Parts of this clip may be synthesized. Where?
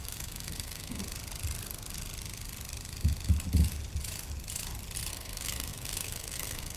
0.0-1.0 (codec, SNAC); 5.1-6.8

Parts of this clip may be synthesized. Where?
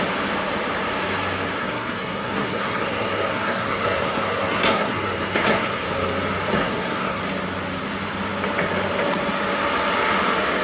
1.6-5.9 (codec, SNAC); 6.6-7.2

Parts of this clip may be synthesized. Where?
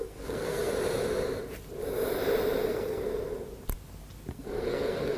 0.0-0.7 (codec, SNAC); 2.6-3.1; 4.3-5.2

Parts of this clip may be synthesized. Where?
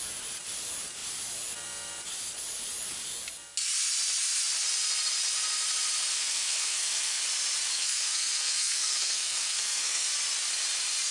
6.1-7.2 (codec, SNAC); 7.7-10.1